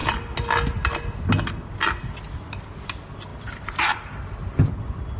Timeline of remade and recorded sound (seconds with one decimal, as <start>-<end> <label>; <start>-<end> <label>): 0.0-3.3 recorded; 3.3-4.7 remade; 4.7-5.2 recorded